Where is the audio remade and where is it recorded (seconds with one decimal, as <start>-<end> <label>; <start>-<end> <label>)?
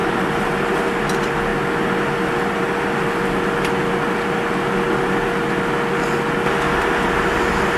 0.0-7.8 recorded